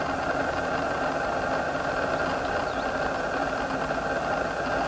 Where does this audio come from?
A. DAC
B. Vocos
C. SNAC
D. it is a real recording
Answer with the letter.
D